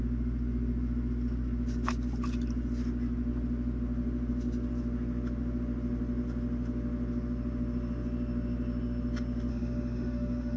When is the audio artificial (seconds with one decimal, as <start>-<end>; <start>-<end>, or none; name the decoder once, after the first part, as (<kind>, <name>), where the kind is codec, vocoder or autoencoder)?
9.5-10.6 (autoencoder, DAC-VAE)

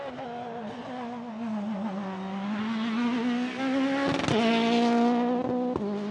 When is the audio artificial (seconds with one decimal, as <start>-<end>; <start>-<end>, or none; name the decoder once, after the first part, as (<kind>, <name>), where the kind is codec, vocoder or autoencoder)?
none

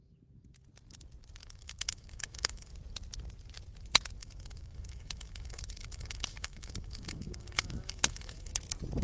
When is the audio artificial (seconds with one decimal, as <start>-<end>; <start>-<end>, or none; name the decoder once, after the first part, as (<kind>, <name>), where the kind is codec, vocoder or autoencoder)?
1.4-2.7 (autoencoder, DAC-VAE); 4.2-8.5

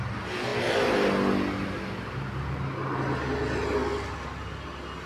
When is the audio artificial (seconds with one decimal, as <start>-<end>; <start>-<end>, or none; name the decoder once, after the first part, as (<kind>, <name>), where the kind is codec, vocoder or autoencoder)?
none

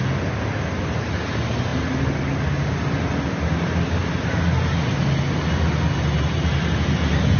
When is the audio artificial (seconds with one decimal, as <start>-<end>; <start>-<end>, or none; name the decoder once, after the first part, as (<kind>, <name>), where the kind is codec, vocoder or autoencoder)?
none

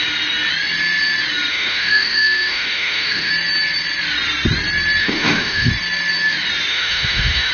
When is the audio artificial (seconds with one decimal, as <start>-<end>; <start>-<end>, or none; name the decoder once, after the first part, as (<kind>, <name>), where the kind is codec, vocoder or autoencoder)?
1.5-3.3 (autoencoder, DAC-VAE); 5.0-5.7; 6.7-7.5